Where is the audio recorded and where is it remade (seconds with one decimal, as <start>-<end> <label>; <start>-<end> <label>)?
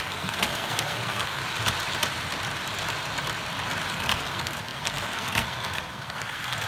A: 0.0-1.4 remade; 1.4-3.9 recorded; 3.9-6.7 remade